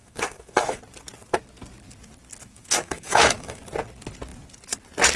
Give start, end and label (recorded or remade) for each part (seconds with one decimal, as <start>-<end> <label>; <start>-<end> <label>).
0.0-0.8 remade; 0.8-2.5 recorded; 2.5-3.6 remade; 3.6-5.2 recorded

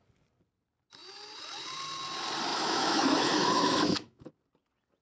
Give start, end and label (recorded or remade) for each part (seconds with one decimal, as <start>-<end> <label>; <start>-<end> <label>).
0.0-2.5 recorded; 2.5-4.3 remade; 4.3-5.0 recorded

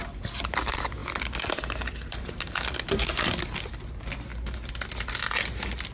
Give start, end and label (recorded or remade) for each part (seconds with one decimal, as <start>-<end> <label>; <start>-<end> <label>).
0.0-5.9 recorded

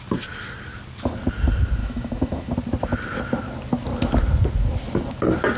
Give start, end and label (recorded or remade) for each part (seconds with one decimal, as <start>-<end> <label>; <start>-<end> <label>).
0.0-1.8 recorded; 1.8-2.5 remade; 2.5-5.6 recorded

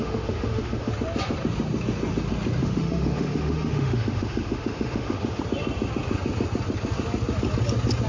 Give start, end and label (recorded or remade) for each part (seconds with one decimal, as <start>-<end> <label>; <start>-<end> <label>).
0.0-0.9 remade; 0.9-2.6 recorded; 2.6-5.4 remade; 5.4-8.1 recorded